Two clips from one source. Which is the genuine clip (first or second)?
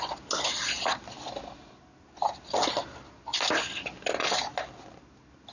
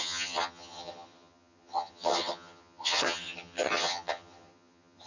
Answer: first